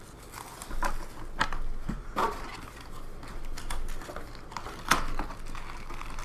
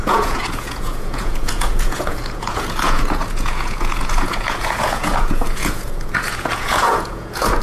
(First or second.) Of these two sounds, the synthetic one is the second